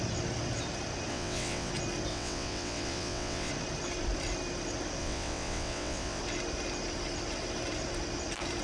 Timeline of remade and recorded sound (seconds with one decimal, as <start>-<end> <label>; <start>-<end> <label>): 0.0-1.1 recorded; 1.1-1.7 remade; 1.7-2.1 recorded; 2.1-3.5 remade; 3.5-5.0 recorded; 5.0-6.2 remade; 6.2-8.6 recorded